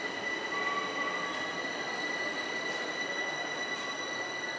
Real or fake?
real